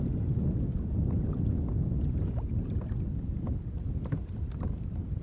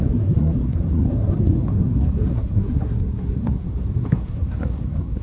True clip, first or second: first